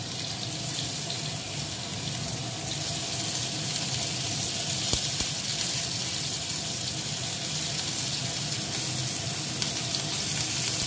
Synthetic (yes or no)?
no